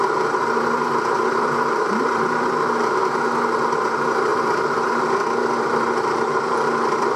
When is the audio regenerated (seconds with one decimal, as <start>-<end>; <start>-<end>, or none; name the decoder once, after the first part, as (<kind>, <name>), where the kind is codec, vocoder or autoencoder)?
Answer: 0.0-3.0 (vocoder, BigVGAN v2); 3.8-7.2